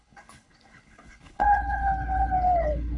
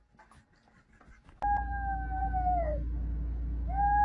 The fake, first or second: first